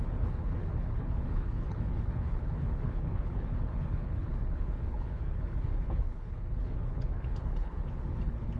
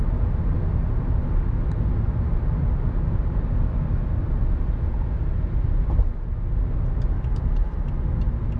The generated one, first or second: first